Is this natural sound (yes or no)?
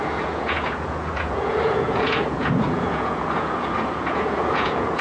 no